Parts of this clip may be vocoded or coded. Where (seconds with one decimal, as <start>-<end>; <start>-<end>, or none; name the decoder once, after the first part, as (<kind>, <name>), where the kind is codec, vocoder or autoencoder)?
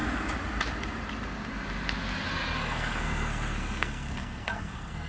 2.6-5.1 (codec, SNAC)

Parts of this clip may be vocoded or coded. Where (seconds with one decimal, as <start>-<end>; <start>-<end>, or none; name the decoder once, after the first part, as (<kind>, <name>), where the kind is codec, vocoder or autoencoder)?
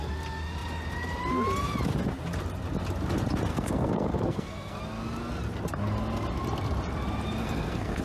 3.5-4.8 (codec, SNAC); 7.4-8.0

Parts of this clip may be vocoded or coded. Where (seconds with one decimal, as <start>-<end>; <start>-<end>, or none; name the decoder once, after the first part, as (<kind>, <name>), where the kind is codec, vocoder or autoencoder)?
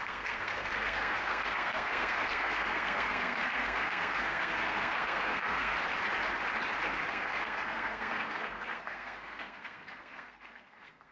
0.0-5.7 (codec, SNAC); 7.1-11.1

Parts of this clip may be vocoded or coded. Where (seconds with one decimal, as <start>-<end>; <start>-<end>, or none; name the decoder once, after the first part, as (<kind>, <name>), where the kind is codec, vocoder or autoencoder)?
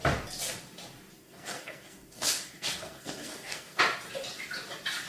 1.2-3.8 (codec, SNAC)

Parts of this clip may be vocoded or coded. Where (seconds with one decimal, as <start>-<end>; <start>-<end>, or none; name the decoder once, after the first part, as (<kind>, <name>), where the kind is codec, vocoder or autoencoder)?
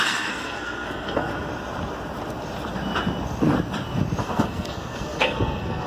0.0-1.3 (codec, SNAC); 4.2-5.9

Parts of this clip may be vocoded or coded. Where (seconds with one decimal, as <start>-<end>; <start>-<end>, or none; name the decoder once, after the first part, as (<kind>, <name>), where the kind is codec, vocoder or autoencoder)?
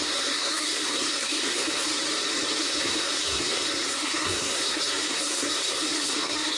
0.0-1.9 (codec, SNAC); 2.6-6.6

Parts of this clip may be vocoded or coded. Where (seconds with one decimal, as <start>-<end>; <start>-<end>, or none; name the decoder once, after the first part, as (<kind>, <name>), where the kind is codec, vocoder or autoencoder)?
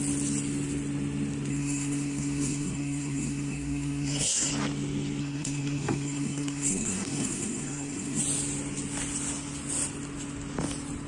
1.5-4.5 (codec, SNAC); 5.2-8.2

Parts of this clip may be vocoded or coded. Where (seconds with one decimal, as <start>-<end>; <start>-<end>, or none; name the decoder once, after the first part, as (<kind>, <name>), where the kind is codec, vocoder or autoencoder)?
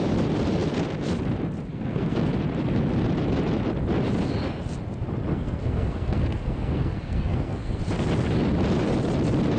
1.7-2.3 (codec, SNAC); 5.3-7.8